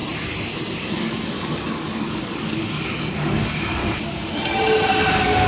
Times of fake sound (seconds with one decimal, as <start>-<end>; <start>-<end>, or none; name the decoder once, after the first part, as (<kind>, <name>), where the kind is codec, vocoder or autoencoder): 0.9-3.8 (codec, DAC); 5.1-5.5